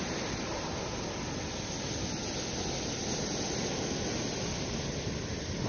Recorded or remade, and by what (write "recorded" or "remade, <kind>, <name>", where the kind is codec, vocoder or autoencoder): recorded